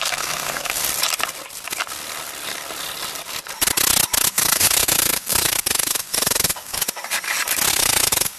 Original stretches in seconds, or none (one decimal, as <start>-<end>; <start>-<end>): 0.8-4.3; 6.8-7.7